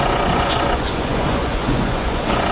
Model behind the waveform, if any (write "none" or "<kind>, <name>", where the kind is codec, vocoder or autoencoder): vocoder, Vocos